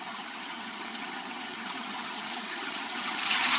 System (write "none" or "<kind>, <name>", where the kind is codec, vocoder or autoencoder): vocoder, HiFi-GAN